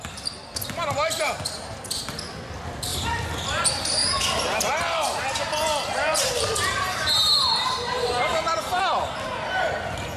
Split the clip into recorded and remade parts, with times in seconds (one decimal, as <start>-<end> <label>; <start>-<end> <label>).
0.0-4.0 recorded; 4.0-8.8 remade; 8.8-10.2 recorded

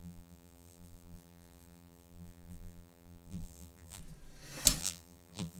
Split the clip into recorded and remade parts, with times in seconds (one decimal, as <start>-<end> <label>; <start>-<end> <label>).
0.0-4.0 remade; 4.0-4.8 recorded; 4.8-5.6 remade

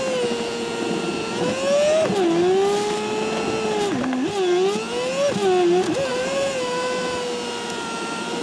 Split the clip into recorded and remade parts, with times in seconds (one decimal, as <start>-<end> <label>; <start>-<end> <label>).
0.0-6.1 recorded; 6.1-8.4 remade

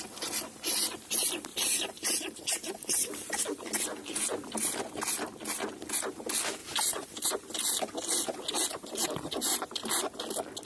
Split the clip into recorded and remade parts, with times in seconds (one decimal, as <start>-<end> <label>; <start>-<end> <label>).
0.0-1.5 recorded; 1.5-3.4 remade; 3.4-6.6 recorded; 6.6-7.3 remade; 7.3-8.7 recorded; 8.7-9.9 remade; 9.9-10.6 recorded